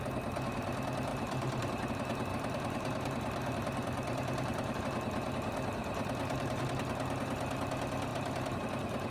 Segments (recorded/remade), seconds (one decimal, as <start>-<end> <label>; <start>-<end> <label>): 0.0-1.1 recorded; 1.1-1.9 remade; 1.9-2.3 recorded; 2.3-4.8 remade; 4.8-5.8 recorded; 5.8-6.6 remade; 6.6-8.1 recorded; 8.1-8.6 remade; 8.6-9.1 recorded